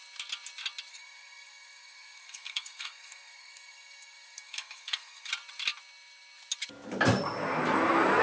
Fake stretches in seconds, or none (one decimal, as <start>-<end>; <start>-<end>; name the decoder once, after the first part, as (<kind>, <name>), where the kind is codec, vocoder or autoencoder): 0.9-5.3 (codec, SNAC)